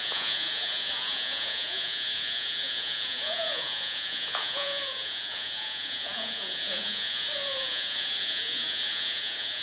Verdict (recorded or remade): remade